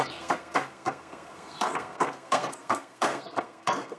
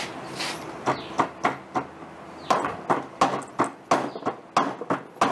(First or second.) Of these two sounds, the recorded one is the second